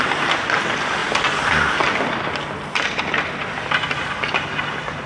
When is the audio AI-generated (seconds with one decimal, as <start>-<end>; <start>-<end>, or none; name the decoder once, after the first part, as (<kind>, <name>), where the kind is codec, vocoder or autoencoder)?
none